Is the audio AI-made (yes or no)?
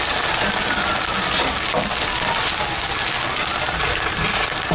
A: no